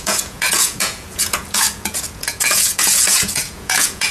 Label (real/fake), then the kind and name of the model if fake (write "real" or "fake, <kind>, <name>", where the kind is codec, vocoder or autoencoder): fake, vocoder, Vocos